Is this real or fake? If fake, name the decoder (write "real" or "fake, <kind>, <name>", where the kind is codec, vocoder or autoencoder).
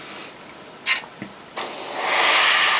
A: real